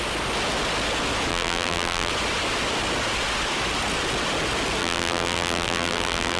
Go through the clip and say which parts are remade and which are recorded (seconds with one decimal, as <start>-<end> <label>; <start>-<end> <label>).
0.0-1.3 recorded; 1.3-2.1 remade; 2.1-4.8 recorded; 4.8-6.4 remade